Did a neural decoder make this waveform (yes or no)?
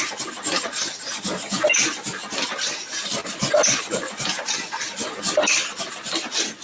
yes